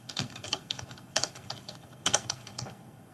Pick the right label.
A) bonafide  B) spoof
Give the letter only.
B